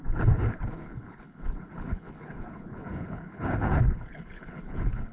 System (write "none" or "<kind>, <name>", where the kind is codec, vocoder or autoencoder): codec, HILCodec